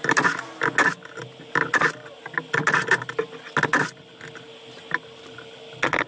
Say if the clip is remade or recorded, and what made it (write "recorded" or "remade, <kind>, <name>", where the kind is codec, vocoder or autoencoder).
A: recorded